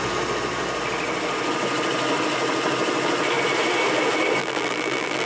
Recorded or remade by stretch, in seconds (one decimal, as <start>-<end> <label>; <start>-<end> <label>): 0.0-4.4 recorded; 4.4-5.3 remade